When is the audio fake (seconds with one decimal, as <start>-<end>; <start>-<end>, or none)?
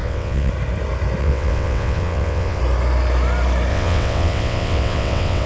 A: 0.0-0.5; 1.2-2.6; 3.7-5.5